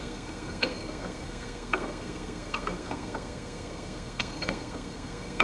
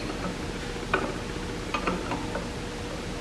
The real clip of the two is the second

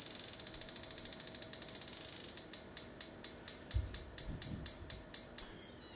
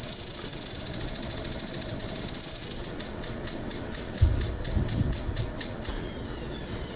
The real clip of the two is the first